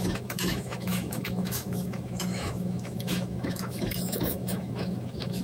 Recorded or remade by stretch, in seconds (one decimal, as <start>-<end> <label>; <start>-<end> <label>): 0.0-5.4 remade